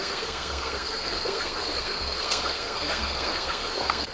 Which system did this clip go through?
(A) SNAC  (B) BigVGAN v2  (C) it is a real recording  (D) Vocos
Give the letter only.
A